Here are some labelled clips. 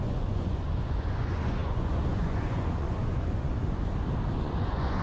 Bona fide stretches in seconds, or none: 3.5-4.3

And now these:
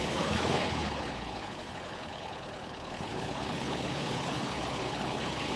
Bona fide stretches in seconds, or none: none

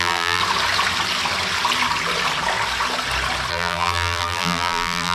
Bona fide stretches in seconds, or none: 0.4-3.5

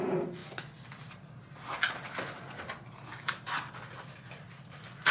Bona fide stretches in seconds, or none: 0.0-5.1

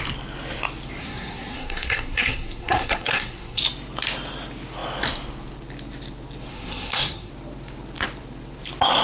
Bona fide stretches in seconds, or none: 0.0-1.0; 3.6-6.5; 7.3-9.0

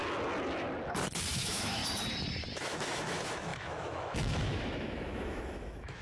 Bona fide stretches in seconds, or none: 0.0-1.3; 1.8-2.5

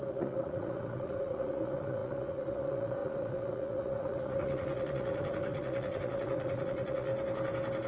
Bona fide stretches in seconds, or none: 7.1-7.9